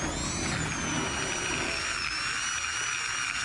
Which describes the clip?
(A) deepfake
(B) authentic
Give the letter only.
B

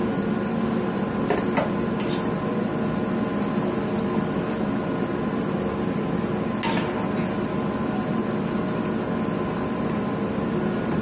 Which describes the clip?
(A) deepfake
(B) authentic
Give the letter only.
B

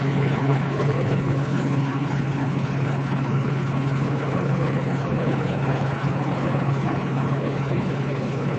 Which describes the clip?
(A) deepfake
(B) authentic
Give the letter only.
A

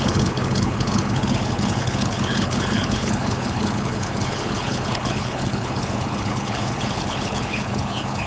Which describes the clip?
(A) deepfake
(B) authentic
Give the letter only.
A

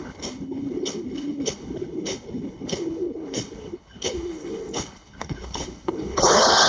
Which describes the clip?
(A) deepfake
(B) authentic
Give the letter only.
A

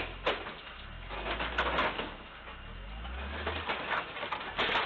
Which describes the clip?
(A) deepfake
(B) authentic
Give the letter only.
B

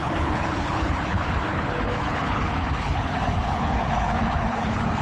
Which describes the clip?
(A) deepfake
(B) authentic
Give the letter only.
A